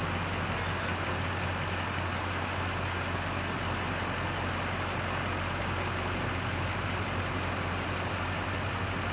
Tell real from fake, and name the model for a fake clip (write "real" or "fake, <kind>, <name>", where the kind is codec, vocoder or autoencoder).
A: real